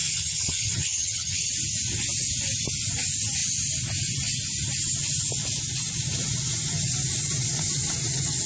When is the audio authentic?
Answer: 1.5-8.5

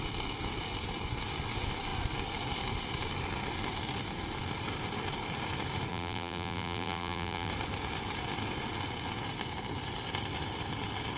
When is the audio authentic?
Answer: 0.0-5.9; 7.5-11.2

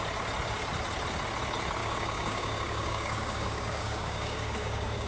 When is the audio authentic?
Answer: 0.0-1.8

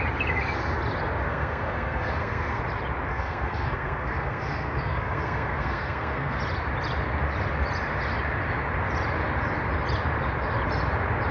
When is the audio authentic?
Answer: 0.0-1.3; 2.6-3.1; 6.4-11.3